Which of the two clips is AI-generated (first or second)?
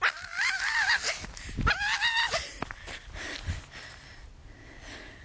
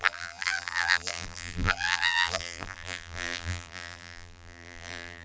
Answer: second